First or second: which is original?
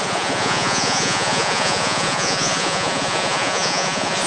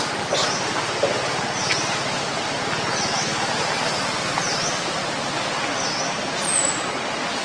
second